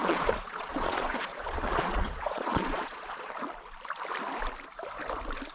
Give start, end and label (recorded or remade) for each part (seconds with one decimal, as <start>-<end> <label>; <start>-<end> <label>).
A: 0.0-3.3 remade; 3.3-5.5 recorded